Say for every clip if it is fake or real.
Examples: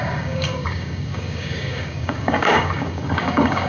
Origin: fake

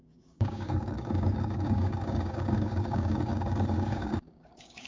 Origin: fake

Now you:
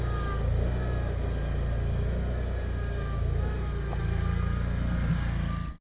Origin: real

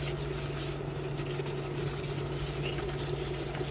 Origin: real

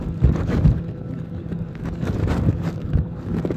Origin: fake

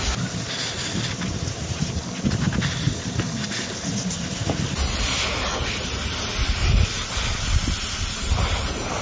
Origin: real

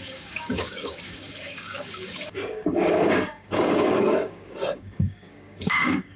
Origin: fake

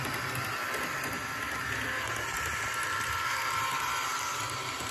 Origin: real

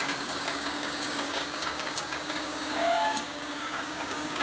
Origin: fake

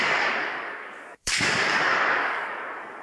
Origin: fake